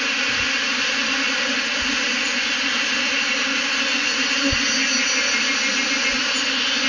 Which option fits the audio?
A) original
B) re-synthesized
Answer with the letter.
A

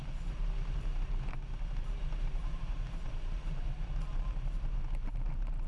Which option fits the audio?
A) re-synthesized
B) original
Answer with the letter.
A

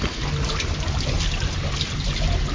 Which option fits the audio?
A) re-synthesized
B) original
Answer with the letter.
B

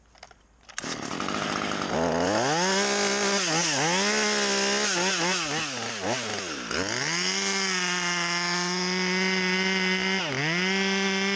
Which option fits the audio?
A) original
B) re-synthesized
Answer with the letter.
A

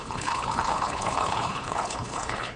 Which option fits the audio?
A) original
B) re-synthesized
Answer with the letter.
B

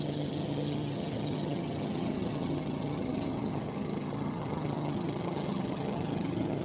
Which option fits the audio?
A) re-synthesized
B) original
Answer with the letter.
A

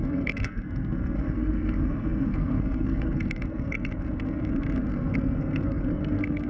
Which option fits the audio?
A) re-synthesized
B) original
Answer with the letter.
A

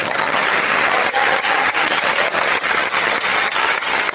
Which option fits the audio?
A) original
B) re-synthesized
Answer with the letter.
B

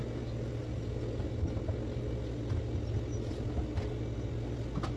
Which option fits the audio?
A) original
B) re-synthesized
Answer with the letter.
A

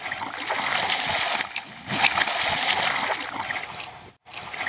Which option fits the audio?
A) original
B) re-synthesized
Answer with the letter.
A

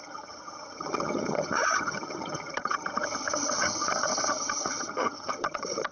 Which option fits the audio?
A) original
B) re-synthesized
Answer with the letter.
B